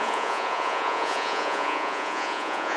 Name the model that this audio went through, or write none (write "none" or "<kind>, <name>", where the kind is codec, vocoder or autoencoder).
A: vocoder, Vocos